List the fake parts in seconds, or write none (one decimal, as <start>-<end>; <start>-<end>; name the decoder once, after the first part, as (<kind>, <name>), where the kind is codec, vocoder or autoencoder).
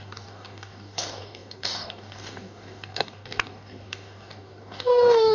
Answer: 0.0-5.3 (codec, DAC)